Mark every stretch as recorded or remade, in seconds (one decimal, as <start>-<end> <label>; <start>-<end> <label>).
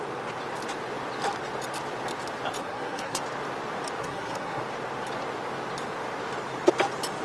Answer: 0.0-2.6 recorded; 2.6-3.2 remade; 3.2-4.0 recorded; 4.0-4.6 remade; 4.6-7.2 recorded